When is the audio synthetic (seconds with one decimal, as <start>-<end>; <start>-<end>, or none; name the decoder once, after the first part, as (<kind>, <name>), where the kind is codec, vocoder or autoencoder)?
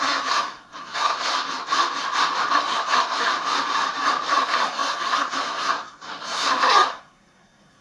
0.0-1.3 (codec, SNAC); 2.5-3.3; 4.3-7.8